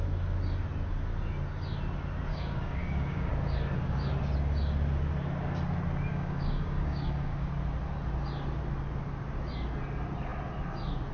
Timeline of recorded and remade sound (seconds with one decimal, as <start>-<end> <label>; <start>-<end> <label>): 0.0-2.3 recorded; 2.3-3.3 remade; 3.3-6.1 recorded; 6.1-7.5 remade; 7.5-11.1 recorded